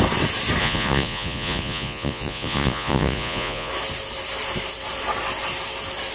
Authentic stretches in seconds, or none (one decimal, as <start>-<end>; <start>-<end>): 0.0-0.6; 3.7-6.1